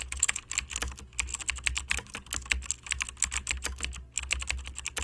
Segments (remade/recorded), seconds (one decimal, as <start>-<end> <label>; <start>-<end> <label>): 0.0-5.0 recorded